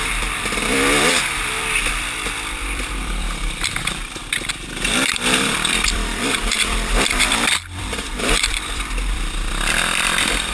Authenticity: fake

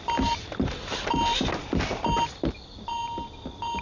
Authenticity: real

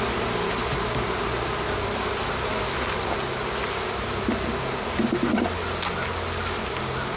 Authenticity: real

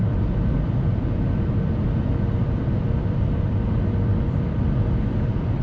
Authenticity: fake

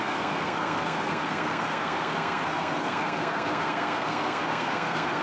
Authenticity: fake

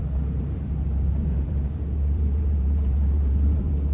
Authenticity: fake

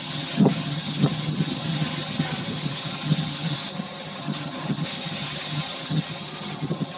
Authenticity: fake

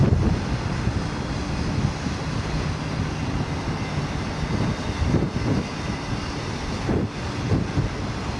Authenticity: real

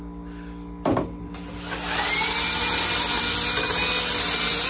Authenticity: real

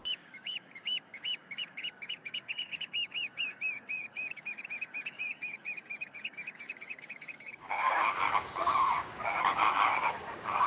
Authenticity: fake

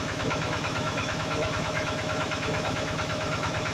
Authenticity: fake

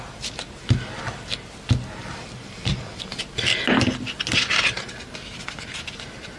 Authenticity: real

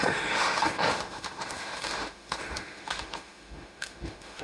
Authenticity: fake